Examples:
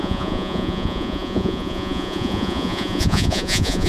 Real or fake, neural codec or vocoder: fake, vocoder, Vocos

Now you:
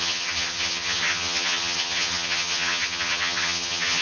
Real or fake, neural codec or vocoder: fake, vocoder, HiFi-GAN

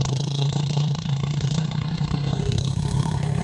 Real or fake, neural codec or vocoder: fake, codec, SNAC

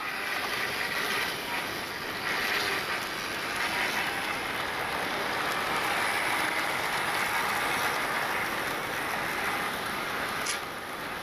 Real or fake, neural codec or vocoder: real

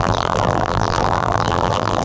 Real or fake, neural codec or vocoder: fake, vocoder, BigVGAN v2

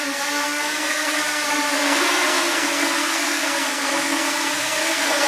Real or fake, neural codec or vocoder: fake, codec, SNAC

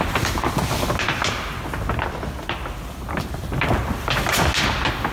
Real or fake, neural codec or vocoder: real